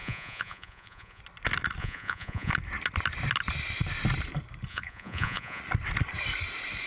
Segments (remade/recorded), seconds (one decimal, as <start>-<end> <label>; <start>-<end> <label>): 0.0-1.2 remade; 1.2-1.8 recorded; 1.8-2.5 remade; 2.5-4.7 recorded; 4.7-5.6 remade; 5.6-6.9 recorded